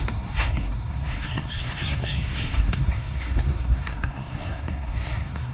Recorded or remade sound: remade